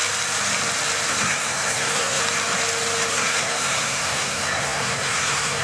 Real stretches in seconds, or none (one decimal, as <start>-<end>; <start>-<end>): 0.0-1.1; 2.2-3.1